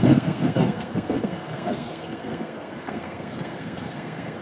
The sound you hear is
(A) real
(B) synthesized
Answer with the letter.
B